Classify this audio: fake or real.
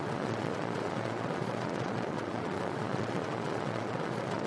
fake